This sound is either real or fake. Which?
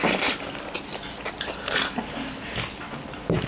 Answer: real